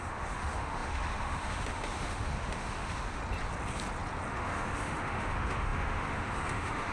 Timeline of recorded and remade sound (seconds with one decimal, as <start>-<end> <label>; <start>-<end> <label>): 0.0-3.2 remade; 3.2-4.3 recorded; 4.3-6.9 remade